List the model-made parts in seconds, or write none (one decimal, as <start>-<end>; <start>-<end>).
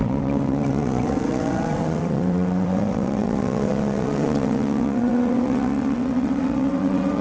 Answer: 0.0-7.2